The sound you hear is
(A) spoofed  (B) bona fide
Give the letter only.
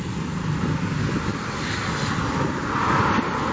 B